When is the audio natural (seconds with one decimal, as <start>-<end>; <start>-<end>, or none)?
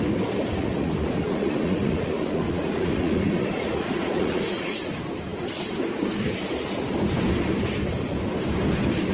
0.0-0.6; 4.8-9.1